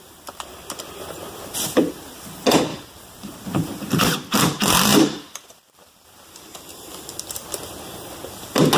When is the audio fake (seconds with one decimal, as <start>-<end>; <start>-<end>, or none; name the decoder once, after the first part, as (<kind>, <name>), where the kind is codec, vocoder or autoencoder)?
2.7-4.4 (vocoder, BigVGAN v2); 4.9-6.9